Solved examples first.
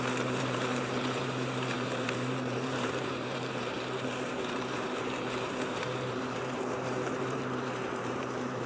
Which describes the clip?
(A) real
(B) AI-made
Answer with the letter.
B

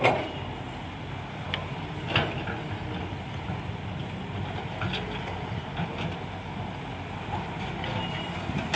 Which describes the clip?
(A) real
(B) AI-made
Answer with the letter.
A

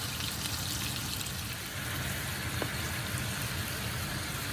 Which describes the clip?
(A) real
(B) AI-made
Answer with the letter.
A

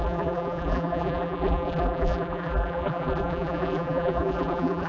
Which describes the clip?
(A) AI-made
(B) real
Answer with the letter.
A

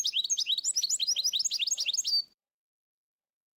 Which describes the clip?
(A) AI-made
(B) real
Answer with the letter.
B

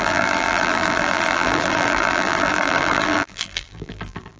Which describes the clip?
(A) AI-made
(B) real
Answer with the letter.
A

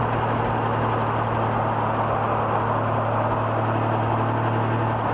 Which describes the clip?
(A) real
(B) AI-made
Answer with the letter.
A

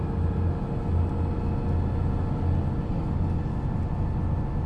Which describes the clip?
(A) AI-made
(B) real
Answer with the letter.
B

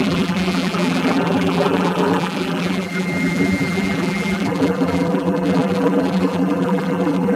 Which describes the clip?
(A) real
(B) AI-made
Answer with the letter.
B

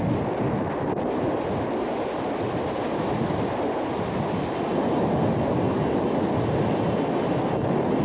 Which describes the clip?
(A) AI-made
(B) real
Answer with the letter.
B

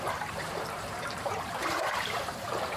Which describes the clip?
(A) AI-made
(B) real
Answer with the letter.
A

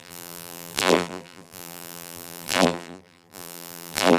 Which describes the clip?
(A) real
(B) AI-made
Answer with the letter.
B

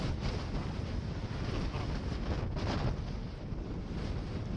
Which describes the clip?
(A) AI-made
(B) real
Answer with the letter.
A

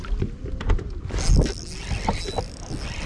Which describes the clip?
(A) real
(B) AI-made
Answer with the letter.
A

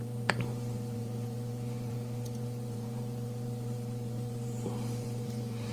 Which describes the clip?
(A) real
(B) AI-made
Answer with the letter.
B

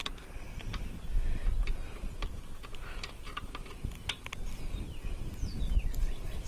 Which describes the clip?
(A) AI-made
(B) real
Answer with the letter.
B